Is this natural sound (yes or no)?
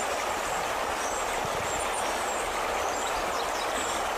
yes